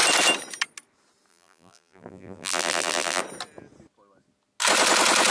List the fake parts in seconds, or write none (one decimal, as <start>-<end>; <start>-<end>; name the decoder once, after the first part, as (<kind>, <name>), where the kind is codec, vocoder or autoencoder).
1.3-3.2 (vocoder, BigVGAN v2)